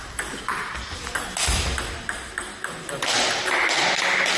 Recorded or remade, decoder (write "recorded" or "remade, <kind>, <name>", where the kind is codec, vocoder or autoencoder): recorded